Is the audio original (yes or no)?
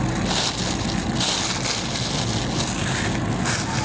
yes